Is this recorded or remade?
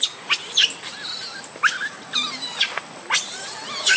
recorded